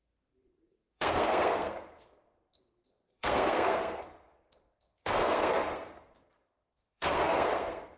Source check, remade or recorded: remade